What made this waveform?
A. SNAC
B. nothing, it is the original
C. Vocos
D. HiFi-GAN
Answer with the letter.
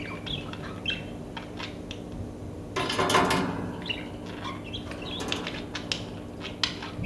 B